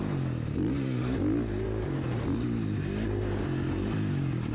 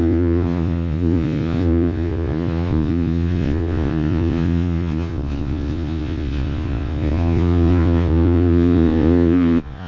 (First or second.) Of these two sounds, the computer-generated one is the second